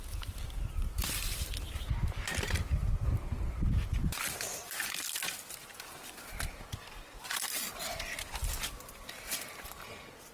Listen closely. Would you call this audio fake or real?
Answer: real